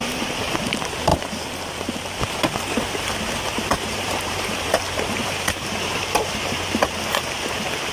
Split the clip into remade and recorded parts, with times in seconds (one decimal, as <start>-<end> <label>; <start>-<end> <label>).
0.0-3.7 recorded; 3.7-6.5 remade; 6.5-7.9 recorded